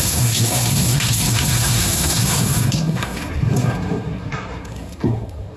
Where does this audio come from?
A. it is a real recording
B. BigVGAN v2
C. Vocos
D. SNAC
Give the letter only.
D